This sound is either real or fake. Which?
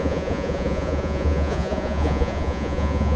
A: fake